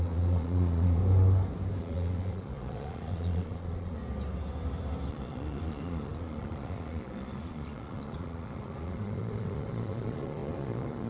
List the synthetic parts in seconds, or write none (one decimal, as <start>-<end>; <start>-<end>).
0.0-1.0; 1.8-4.0; 5.1-11.1